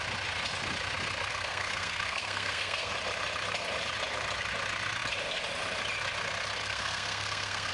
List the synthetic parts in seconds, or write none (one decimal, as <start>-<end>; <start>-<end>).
1.3-2.9; 6.6-7.7